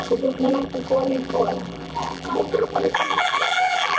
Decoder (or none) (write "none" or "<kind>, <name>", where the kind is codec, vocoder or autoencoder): vocoder, BigVGAN v2